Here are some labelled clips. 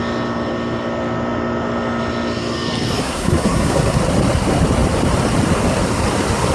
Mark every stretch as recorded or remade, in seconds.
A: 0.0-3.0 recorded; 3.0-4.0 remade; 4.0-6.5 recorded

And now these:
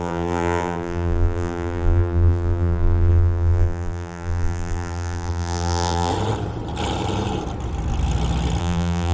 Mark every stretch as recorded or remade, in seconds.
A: 0.0-6.1 remade; 6.1-8.6 recorded; 8.6-9.1 remade